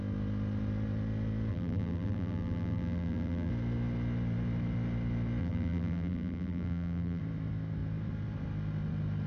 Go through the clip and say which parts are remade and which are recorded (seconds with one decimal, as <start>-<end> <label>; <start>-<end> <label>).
0.0-1.5 recorded; 1.5-3.5 remade; 3.5-5.4 recorded; 5.4-7.2 remade; 7.2-9.3 recorded